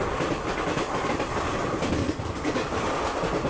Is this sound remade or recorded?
recorded